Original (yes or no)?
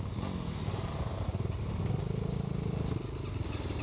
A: yes